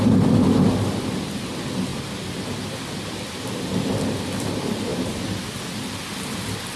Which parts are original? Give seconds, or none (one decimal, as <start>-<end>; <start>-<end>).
0.0-1.9; 4.0-6.8